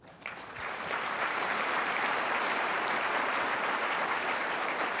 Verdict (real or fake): fake